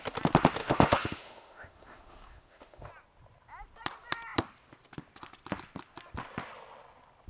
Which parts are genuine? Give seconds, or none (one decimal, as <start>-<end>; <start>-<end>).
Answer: 0.0-0.6; 2.9-7.3